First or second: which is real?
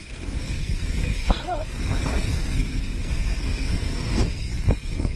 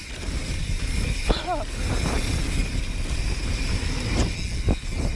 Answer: second